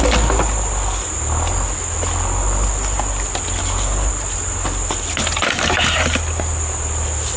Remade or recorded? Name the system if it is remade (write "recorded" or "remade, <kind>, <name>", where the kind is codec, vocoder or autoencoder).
recorded